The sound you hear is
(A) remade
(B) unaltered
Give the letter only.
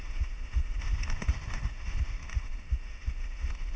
A